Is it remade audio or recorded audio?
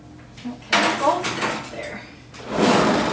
remade